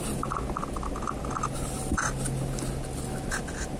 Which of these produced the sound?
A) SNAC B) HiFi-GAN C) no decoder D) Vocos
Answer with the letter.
C